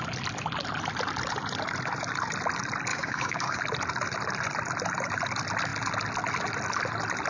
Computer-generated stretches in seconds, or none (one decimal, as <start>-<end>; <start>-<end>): 2.9-3.6